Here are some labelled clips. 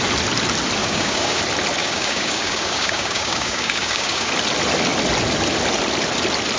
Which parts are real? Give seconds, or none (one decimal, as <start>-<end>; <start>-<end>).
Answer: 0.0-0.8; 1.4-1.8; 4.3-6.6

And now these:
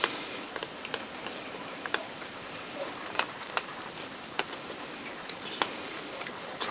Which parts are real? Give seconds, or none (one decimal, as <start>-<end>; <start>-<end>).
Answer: 0.6-1.3

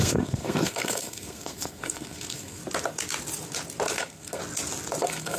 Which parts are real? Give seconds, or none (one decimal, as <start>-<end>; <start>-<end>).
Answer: 2.6-4.0; 4.4-5.0